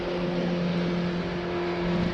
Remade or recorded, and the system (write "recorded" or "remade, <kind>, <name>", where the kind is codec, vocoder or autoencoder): recorded